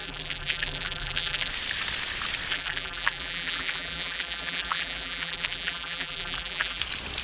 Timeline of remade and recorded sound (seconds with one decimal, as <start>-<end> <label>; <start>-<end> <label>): 0.0-1.5 remade; 1.5-2.5 recorded; 2.5-6.8 remade; 6.8-7.2 recorded

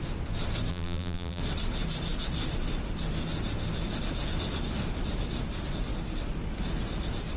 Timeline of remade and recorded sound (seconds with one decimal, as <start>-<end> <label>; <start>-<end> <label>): 0.0-0.7 recorded; 0.7-1.4 remade; 1.4-7.4 recorded

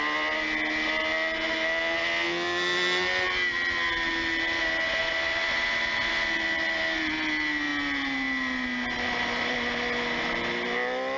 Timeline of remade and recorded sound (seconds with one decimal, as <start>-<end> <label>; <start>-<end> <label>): 0.0-11.2 recorded

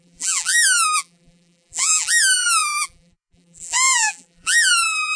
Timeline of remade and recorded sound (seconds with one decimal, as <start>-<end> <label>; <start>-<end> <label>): 0.0-5.2 remade

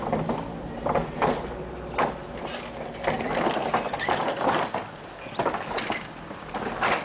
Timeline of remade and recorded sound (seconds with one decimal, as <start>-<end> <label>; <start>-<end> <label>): 0.0-7.0 recorded

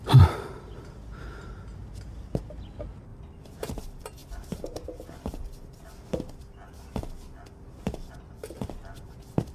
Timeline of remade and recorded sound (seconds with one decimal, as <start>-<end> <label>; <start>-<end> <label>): 0.0-1.8 remade; 1.8-2.4 recorded; 2.4-4.2 remade; 4.2-8.1 recorded; 8.1-9.5 remade

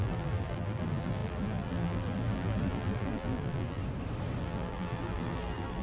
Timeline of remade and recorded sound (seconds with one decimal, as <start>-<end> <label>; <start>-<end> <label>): 0.0-3.8 remade; 3.8-4.4 recorded; 4.4-5.8 remade